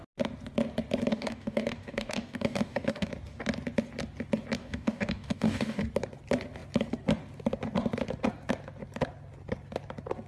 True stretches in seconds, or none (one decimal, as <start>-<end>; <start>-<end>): 0.0-1.1; 3.1-4.6; 5.8-10.3